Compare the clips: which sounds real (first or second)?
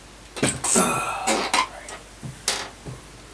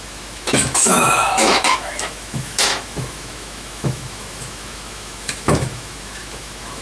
first